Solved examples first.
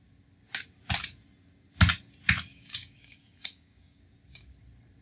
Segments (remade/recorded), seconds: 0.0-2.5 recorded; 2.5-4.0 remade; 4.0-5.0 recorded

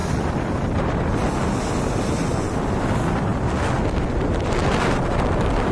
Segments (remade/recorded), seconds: 0.0-5.7 recorded

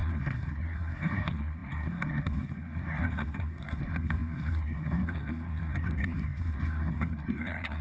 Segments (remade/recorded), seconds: 0.0-7.8 remade

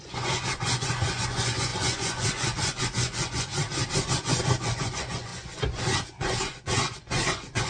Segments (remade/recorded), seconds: 0.0-3.5 remade; 3.5-4.1 recorded; 4.1-7.7 remade

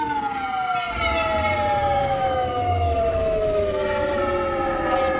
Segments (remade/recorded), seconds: 0.0-2.0 recorded; 2.0-4.2 remade; 4.2-5.2 recorded